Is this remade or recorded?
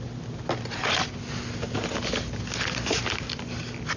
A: recorded